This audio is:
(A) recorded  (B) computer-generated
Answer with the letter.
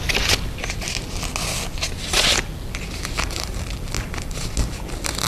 A